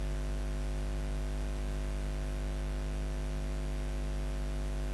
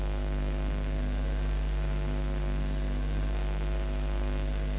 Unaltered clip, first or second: first